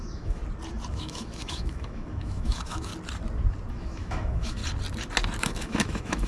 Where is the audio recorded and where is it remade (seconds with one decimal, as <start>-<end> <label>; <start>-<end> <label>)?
0.0-0.4 remade; 0.4-0.9 recorded; 0.9-2.9 remade; 2.9-3.7 recorded; 3.7-4.6 remade; 4.6-5.4 recorded; 5.4-6.3 remade